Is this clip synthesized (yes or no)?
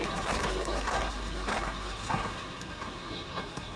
yes